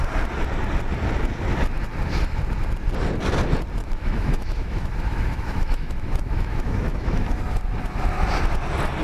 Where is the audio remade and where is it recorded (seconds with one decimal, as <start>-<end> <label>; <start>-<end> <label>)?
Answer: 0.0-3.8 recorded; 3.8-7.6 remade; 7.6-9.0 recorded